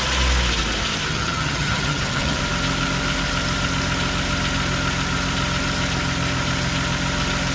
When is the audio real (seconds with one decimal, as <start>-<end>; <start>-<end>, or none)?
0.0-1.1; 2.4-7.5